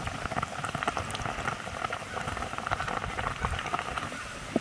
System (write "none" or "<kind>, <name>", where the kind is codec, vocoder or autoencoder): vocoder, BigVGAN v2